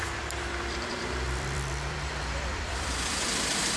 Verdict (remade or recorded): remade